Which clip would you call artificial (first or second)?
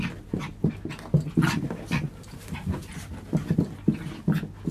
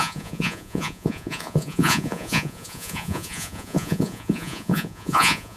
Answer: second